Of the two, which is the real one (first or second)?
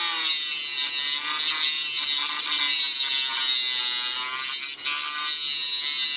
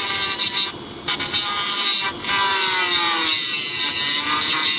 first